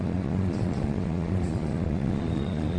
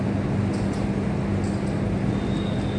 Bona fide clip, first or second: second